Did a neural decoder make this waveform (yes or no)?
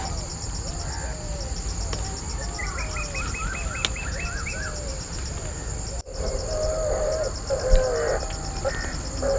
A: no